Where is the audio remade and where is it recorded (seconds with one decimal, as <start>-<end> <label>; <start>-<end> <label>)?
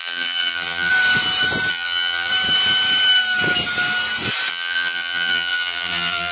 0.0-0.9 remade; 0.9-1.7 recorded; 1.7-2.3 remade; 2.3-4.5 recorded; 4.5-6.3 remade